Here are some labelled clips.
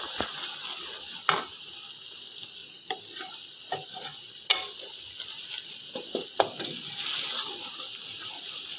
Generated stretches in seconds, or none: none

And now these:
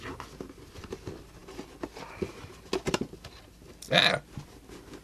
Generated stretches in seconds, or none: none

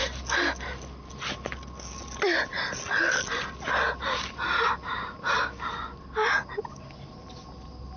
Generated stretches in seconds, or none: none

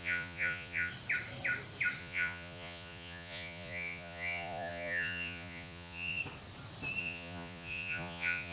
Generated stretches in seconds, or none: 0.0-0.9 (vocoder, Vocos); 2.0-6.2; 7.0-8.5